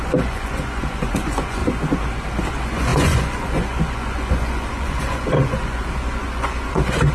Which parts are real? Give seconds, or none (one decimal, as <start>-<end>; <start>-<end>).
1.6-2.5